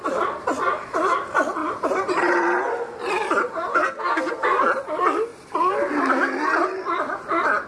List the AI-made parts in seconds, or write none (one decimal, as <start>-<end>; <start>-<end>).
3.7-4.6